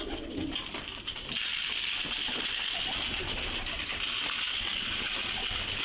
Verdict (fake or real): real